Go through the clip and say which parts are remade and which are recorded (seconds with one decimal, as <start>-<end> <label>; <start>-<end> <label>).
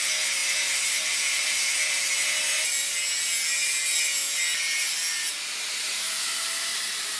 0.0-7.2 recorded